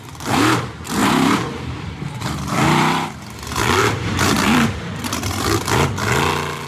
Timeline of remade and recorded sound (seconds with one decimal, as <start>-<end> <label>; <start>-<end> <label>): 0.0-1.0 recorded; 1.0-5.0 remade; 5.0-6.7 recorded